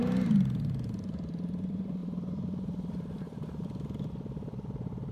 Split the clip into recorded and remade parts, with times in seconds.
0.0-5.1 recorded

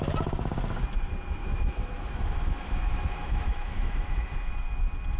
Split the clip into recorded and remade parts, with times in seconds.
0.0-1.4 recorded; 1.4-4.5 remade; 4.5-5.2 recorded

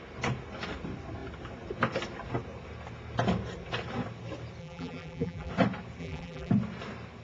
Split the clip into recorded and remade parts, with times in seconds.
0.0-4.6 recorded; 4.6-5.5 remade; 5.5-6.0 recorded; 6.0-6.5 remade; 6.5-7.2 recorded

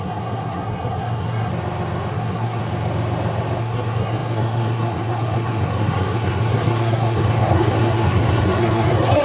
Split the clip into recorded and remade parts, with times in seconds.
0.0-1.5 remade; 1.5-2.1 recorded; 2.1-2.6 remade; 2.6-3.6 recorded; 3.6-9.2 remade

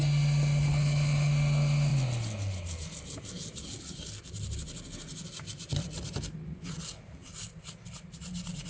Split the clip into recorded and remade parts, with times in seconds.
0.0-0.7 recorded; 0.7-1.3 remade; 1.3-8.7 recorded

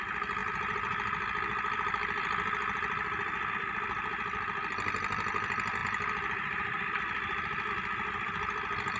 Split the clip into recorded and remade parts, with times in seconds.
0.0-9.0 remade